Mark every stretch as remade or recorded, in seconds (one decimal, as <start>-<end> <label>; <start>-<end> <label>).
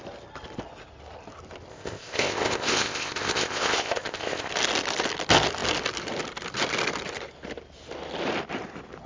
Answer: 0.0-1.7 recorded; 1.7-4.5 remade; 4.5-9.1 recorded